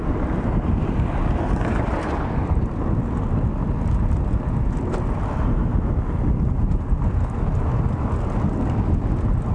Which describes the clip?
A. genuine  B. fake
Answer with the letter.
A